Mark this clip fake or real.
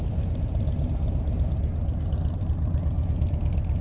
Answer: real